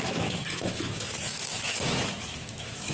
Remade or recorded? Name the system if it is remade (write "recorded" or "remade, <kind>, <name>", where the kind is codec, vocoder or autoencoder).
remade, autoencoder, DAC-VAE